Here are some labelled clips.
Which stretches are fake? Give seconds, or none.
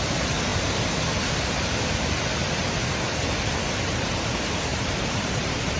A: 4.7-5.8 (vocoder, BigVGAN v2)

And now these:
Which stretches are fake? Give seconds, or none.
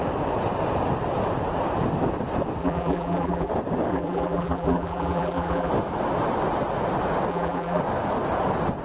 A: 2.6-3.5 (vocoder, BigVGAN v2); 3.9-5.7; 7.3-7.8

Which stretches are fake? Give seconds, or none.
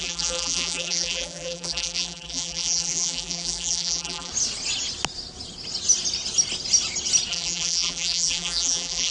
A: 0.0-4.3 (vocoder, BigVGAN v2); 7.3-9.1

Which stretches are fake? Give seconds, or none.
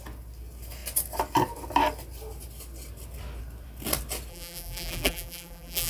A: 4.3-5.9 (vocoder, BigVGAN v2)